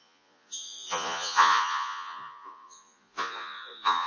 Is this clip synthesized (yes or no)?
yes